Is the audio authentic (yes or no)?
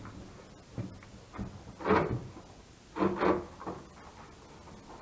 yes